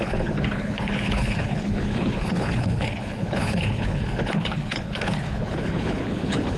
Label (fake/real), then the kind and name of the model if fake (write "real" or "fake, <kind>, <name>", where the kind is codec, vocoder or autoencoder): fake, codec, HILCodec